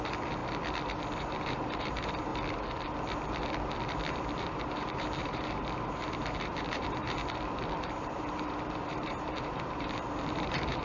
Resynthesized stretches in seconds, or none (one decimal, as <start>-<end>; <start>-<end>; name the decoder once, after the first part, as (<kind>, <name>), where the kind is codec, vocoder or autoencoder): 0.0-0.4 (vocoder, BigVGAN v2); 1.2-2.3; 4.4-7.2; 7.9-10.8